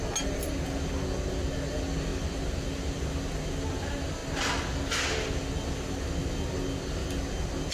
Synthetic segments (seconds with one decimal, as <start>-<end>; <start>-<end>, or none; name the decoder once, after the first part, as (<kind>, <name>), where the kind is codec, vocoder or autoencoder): none